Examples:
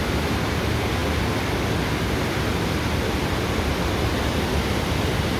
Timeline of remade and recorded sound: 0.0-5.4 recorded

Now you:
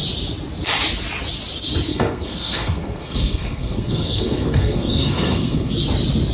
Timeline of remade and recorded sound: 0.0-1.9 recorded; 1.9-5.7 remade; 5.7-6.3 recorded

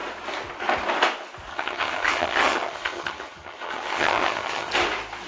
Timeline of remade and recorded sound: 0.0-1.5 recorded; 1.5-4.7 remade; 4.7-5.3 recorded

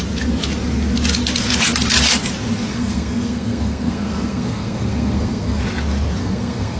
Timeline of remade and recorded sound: 0.0-2.7 recorded; 2.7-5.6 remade; 5.6-6.2 recorded; 6.2-6.8 remade